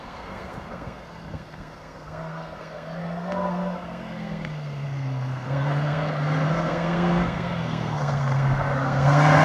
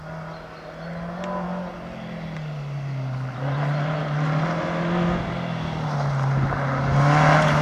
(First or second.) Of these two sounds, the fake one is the first